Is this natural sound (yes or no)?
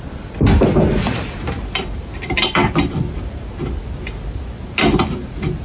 yes